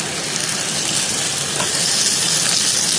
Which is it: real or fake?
real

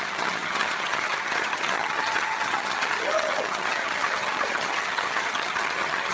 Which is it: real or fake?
fake